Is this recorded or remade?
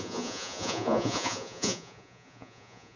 remade